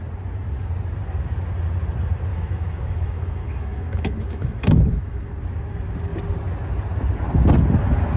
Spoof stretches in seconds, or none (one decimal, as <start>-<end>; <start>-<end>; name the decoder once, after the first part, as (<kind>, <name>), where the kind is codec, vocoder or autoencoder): 2.3-5.3 (autoencoder, DAC-VAE)